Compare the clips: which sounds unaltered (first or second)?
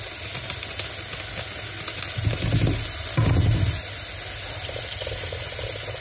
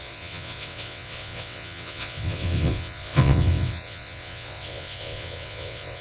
first